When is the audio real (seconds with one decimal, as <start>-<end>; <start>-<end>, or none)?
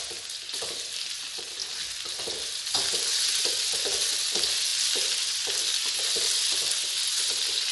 0.0-7.7